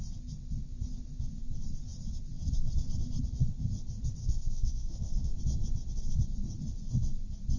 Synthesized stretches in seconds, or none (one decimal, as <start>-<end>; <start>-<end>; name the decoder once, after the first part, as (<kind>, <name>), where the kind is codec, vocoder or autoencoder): 4.2-5.3 (codec, SNAC)